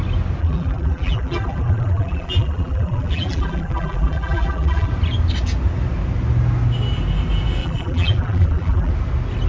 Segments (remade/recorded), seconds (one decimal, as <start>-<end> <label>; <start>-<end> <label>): 0.0-0.4 recorded; 0.4-4.9 remade; 4.9-7.6 recorded; 7.6-8.9 remade; 8.9-9.5 recorded